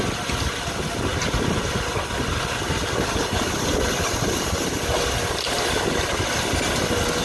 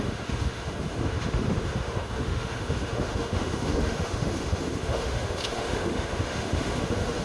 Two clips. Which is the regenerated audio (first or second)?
second